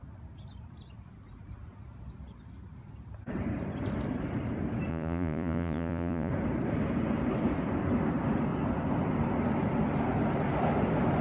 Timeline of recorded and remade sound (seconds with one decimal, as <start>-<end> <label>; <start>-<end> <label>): 0.0-4.9 recorded; 4.9-6.3 remade; 6.3-11.2 recorded